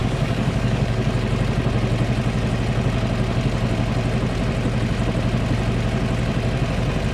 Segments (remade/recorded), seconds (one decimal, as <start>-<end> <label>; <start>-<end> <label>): 0.0-1.1 remade; 1.1-7.1 recorded